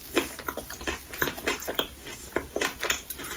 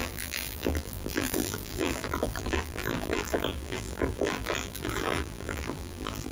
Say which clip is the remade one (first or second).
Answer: second